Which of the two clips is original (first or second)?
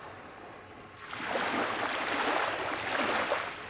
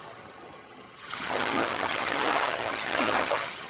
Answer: first